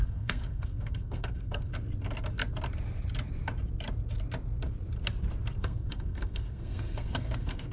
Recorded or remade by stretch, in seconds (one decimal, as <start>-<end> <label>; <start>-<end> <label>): 0.0-1.7 remade; 1.7-5.6 recorded; 5.6-7.7 remade